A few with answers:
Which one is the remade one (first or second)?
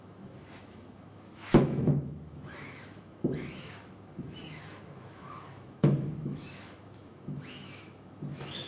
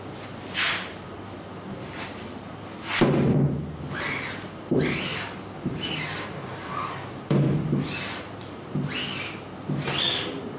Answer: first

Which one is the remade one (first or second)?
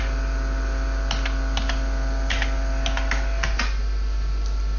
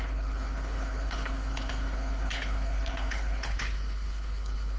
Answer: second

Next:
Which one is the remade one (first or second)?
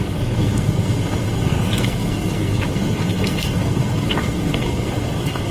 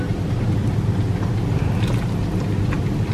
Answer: first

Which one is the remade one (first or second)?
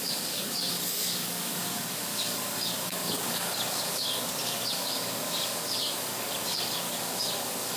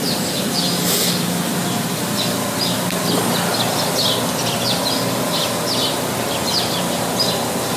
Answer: first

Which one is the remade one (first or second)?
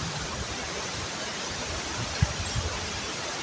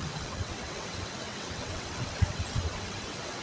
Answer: second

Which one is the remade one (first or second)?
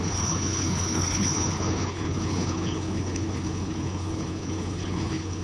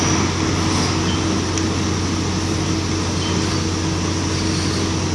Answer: first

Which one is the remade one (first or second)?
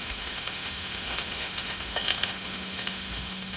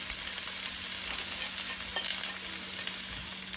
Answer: first